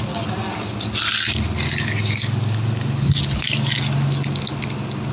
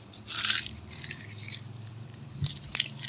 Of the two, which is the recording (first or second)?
first